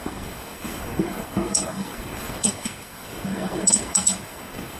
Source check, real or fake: fake